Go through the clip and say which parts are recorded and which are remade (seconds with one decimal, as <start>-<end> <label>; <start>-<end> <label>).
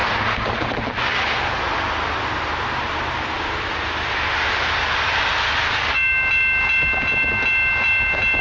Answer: 0.0-8.4 recorded